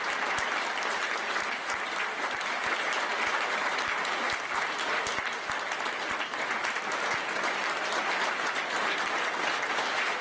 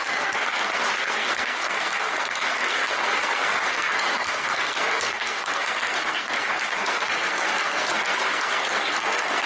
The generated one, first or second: second